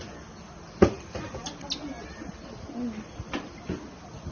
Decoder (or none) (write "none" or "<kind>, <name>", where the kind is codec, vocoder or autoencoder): none